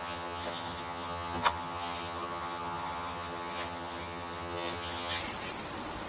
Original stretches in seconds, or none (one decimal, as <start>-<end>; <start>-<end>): 5.2-6.1